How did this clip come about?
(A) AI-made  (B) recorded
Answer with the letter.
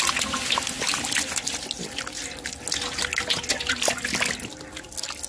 B